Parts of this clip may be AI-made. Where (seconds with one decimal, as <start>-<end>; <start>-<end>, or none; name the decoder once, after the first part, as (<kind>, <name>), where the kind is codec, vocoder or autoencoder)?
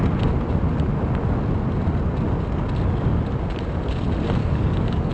4.4-5.1 (codec, DAC)